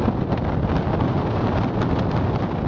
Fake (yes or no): no